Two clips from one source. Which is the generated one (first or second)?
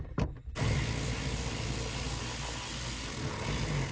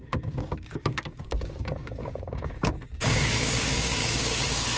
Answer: second